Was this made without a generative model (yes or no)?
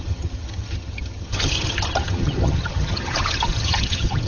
no